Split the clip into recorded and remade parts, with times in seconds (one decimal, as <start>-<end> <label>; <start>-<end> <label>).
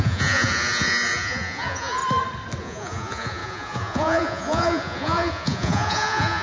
0.0-2.0 remade; 2.0-2.6 recorded; 2.6-6.4 remade